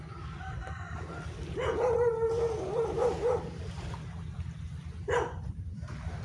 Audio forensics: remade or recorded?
remade